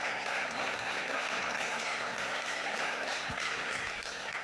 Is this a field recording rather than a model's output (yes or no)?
no